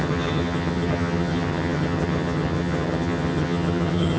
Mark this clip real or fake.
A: fake